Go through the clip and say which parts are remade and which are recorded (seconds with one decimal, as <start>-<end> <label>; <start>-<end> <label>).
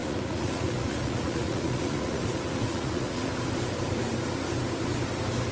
0.0-3.3 remade; 3.3-5.5 recorded